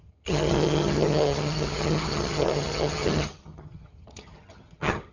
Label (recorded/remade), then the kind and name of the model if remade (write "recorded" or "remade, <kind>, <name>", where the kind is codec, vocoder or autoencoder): remade, vocoder, HiFi-GAN